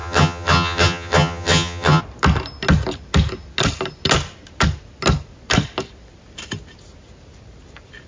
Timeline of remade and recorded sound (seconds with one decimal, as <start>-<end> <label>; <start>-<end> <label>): 0.0-2.0 remade; 2.0-8.1 recorded

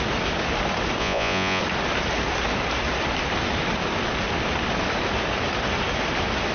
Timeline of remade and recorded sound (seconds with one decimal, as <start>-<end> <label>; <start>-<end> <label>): 0.0-1.0 recorded; 1.0-1.6 remade; 1.6-6.5 recorded

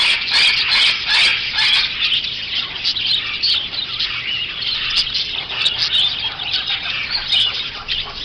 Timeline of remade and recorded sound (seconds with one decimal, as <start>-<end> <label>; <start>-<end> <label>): 0.0-8.2 recorded

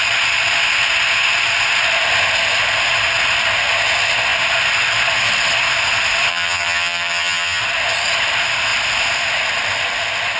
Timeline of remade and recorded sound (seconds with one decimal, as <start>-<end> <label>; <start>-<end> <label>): 0.0-6.3 recorded; 6.3-7.6 remade; 7.6-10.4 recorded

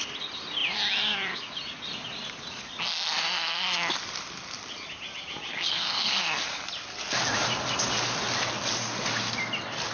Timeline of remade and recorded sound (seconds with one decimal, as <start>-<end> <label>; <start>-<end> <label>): 0.0-5.5 recorded; 5.5-6.2 remade; 6.2-9.9 recorded

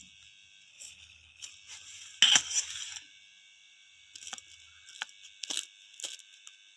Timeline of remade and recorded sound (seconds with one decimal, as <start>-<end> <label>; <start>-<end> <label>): 0.0-0.7 recorded; 0.7-1.5 remade; 1.5-6.8 recorded